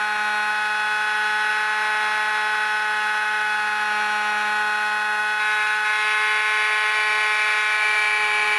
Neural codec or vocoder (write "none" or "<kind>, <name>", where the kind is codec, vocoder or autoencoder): none